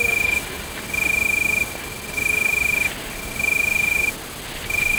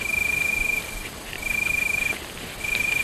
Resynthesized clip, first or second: second